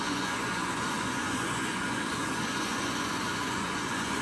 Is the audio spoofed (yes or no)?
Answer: yes